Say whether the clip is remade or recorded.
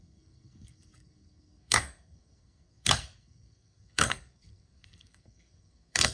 remade